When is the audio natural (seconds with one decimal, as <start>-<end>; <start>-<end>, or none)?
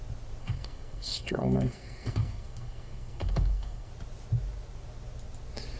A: 0.0-0.4; 3.9-5.8